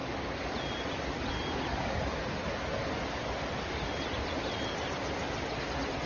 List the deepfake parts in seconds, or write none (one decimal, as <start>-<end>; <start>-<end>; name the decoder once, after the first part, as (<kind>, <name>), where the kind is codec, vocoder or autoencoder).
none